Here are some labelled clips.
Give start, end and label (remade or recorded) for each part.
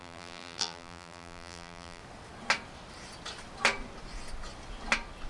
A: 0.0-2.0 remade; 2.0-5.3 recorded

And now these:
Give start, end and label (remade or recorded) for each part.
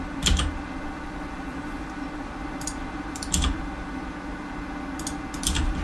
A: 0.0-1.5 recorded; 1.5-4.1 remade; 4.1-5.8 recorded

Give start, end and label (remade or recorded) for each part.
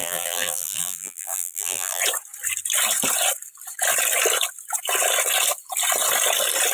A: 0.0-2.0 remade; 2.0-6.7 recorded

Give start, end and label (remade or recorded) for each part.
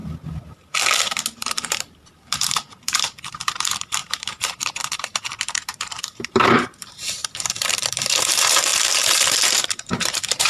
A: 0.0-1.4 recorded; 1.4-10.5 remade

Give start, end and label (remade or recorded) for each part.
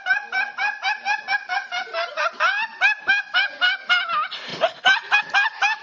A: 0.0-2.7 remade; 2.7-3.3 recorded; 3.3-5.8 remade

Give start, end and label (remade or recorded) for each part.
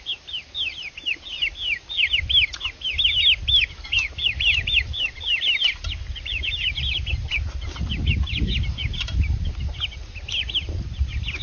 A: 0.0-3.4 recorded; 3.4-7.4 remade; 7.4-11.4 recorded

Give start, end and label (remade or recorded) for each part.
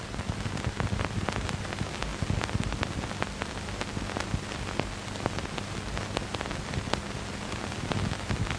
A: 0.0-8.6 recorded